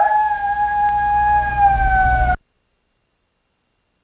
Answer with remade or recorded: recorded